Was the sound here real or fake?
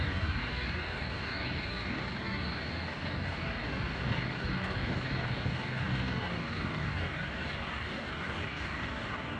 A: fake